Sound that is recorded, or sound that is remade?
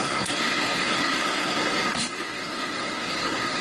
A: remade